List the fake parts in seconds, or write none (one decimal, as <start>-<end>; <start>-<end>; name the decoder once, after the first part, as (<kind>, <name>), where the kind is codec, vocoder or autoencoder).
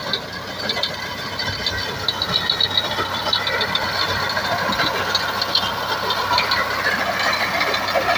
6.2-6.9 (vocoder, BigVGAN v2)